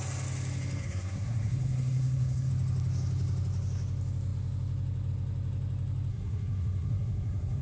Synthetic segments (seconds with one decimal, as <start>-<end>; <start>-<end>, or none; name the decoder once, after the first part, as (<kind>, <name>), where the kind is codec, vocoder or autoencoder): 0.8-2.5 (codec, SNAC); 6.1-7.6